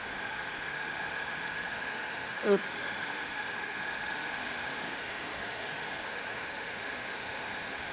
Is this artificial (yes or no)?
yes